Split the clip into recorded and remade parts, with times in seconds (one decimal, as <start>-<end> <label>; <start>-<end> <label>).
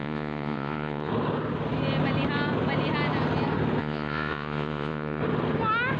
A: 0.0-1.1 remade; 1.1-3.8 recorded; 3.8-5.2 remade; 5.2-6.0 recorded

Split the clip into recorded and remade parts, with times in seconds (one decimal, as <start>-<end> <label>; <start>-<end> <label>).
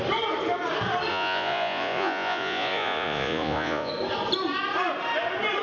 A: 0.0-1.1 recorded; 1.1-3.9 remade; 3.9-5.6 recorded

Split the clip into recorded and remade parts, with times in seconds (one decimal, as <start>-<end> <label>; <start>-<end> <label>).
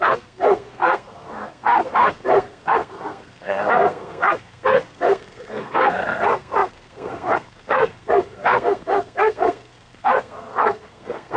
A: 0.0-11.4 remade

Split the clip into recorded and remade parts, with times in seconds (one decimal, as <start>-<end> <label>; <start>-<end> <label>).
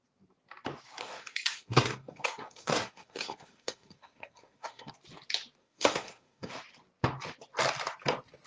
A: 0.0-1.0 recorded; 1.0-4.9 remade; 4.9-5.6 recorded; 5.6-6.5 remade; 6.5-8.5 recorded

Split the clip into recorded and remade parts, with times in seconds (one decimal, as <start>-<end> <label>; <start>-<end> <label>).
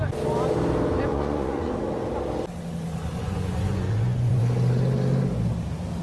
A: 0.0-1.1 recorded; 1.1-1.7 remade; 1.7-3.2 recorded; 3.2-4.4 remade; 4.4-6.0 recorded